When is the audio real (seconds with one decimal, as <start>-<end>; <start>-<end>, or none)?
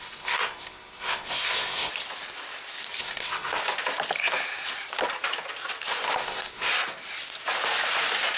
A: 1.9-3.0; 3.6-6.2; 6.7-8.4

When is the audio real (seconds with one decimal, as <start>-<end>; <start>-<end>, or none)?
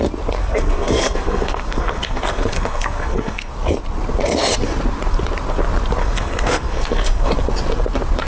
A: 0.0-0.4; 3.5-6.0; 7.3-8.3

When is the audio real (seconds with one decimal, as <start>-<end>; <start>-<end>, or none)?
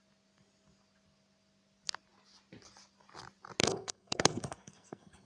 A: 0.0-3.6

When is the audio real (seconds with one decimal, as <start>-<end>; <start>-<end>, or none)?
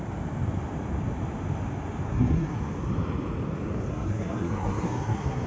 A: 0.0-2.1; 2.6-3.9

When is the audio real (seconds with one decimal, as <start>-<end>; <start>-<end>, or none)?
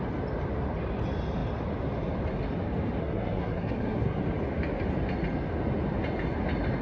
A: 0.0-3.0; 4.2-6.8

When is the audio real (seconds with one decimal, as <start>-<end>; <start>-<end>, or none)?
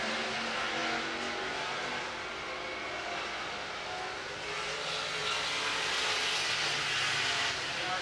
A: 0.0-8.0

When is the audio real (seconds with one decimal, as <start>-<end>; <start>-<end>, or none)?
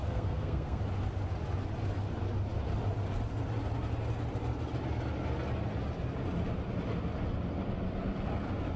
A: 0.8-8.8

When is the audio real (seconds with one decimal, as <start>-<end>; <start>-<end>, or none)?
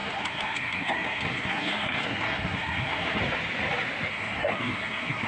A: 3.2-4.1